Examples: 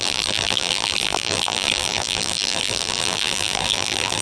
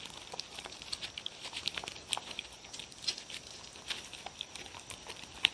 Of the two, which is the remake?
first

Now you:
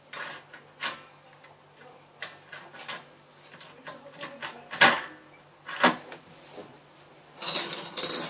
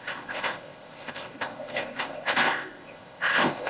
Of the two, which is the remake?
second